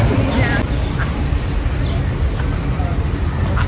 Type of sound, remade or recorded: recorded